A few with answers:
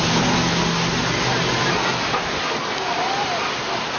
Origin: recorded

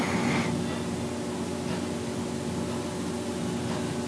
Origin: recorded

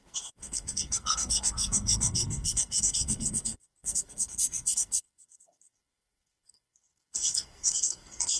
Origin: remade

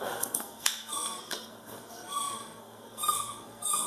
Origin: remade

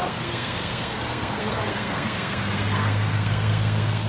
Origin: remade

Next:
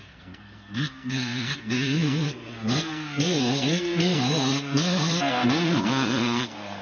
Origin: remade